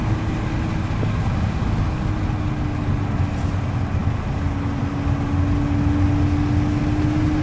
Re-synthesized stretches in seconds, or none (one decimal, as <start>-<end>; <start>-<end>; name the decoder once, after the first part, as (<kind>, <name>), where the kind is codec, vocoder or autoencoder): none